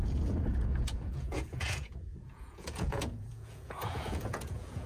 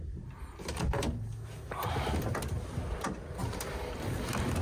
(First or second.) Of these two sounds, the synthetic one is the first